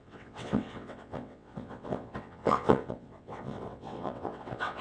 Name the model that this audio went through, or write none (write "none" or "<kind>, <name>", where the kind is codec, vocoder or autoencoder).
vocoder, WaveNeXt